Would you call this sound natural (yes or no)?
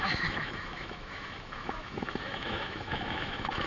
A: no